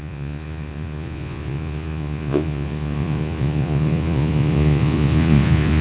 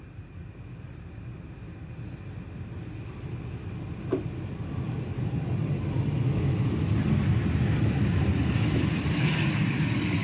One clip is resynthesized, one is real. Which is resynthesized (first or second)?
first